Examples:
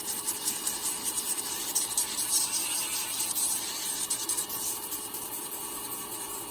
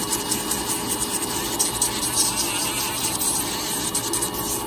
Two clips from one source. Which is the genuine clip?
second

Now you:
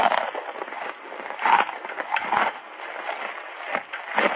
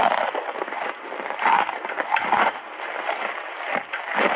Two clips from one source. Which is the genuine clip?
first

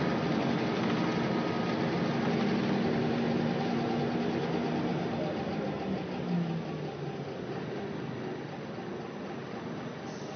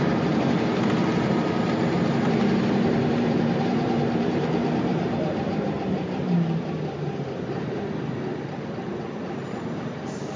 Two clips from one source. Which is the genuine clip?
first